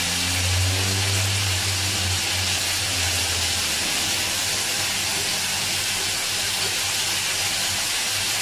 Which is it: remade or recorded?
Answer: recorded